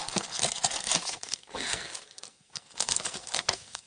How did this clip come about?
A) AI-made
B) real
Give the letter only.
A